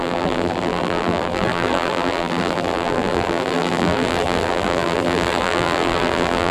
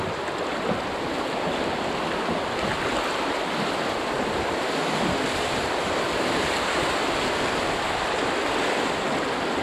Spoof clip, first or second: first